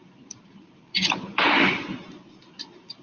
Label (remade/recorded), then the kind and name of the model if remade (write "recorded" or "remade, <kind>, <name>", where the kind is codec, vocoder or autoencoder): remade, vocoder, BigVGAN v2